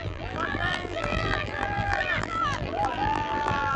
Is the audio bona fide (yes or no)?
no